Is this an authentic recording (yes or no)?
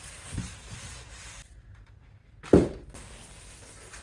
yes